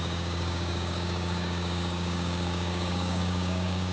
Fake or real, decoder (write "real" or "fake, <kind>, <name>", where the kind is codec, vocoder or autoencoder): fake, codec, DAC